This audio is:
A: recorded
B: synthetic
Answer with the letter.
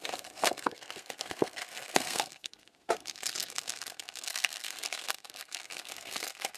B